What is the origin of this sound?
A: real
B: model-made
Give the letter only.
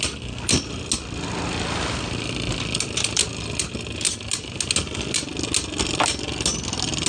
A